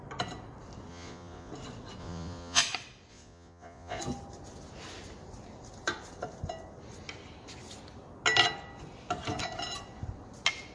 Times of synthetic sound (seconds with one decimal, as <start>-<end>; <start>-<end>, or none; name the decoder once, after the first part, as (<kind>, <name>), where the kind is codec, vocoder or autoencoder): 0.9-1.5 (vocoder, Vocos); 2.0-2.6; 3.1-4.0